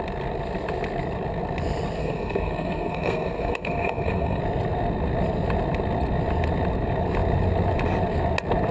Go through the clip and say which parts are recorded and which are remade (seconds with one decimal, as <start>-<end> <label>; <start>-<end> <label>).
0.0-2.0 recorded; 2.0-4.4 remade; 4.4-8.7 recorded